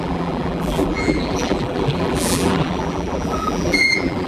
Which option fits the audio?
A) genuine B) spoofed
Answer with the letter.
B